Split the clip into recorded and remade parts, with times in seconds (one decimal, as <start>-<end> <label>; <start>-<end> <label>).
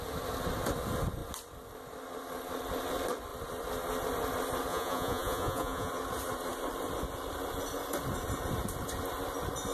0.0-4.7 recorded; 4.7-5.9 remade; 5.9-9.7 recorded